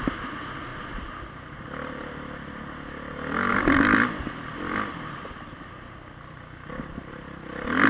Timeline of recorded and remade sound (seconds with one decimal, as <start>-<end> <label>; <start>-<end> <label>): 0.0-3.5 recorded; 3.5-7.1 remade; 7.1-7.9 recorded